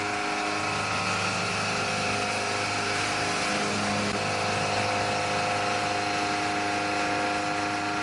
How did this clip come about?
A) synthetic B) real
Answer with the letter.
B